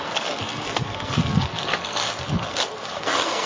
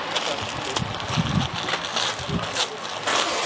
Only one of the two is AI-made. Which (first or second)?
first